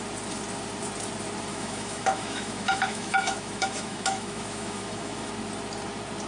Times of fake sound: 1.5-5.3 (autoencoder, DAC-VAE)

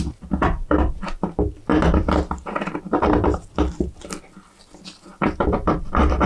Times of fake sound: 1.7-2.8 (vocoder, BigVGAN v2); 5.1-6.3

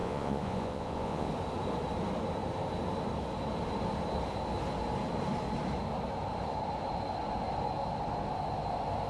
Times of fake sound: 0.0-1.3 (vocoder, Vocos)

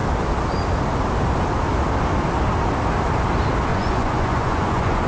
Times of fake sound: 3.7-5.1 (vocoder, Vocos)

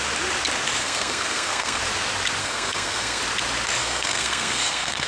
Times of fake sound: 0.8-1.8 (codec, SNAC); 2.4-3.2; 3.8-5.1

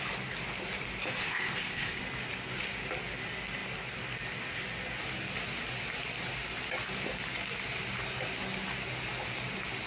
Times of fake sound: 1.2-2.0 (codec, ZipCodec)

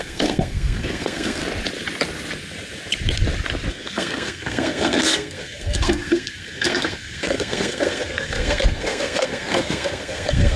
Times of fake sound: 0.0-1.4 (codec, SNAC); 3.7-10.6

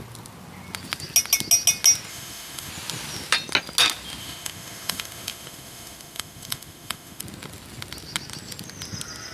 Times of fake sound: 2.1-2.7 (autoencoder, DAC-VAE); 4.2-7.2